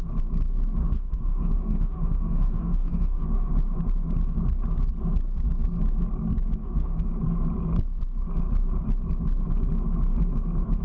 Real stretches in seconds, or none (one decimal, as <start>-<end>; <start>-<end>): 0.0-0.8; 3.5-6.6; 7.1-10.8